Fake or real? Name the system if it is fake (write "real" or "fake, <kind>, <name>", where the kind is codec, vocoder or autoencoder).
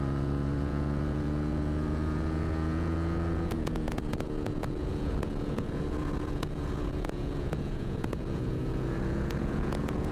fake, vocoder, Vocos